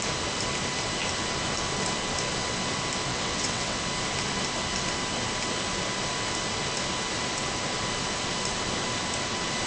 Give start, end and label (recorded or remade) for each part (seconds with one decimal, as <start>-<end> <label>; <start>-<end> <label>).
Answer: 0.0-3.1 recorded; 3.1-3.8 remade; 3.8-9.7 recorded